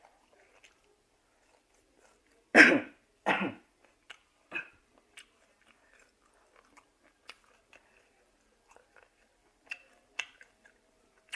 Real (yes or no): no